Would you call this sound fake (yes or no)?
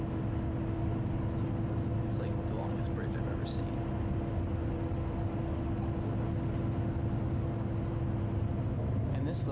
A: no